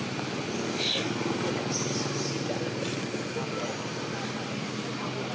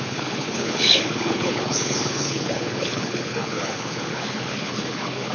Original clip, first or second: first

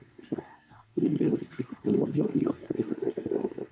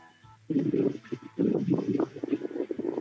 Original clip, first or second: second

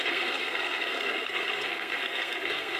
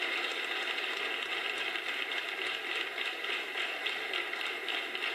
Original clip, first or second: second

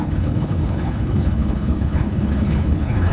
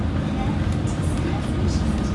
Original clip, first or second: second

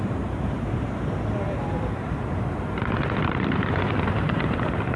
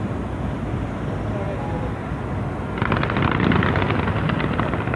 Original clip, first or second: second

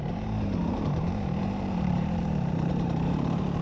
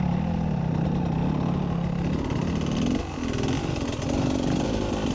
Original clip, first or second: second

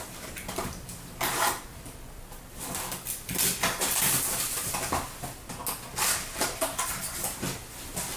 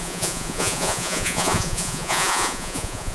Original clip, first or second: first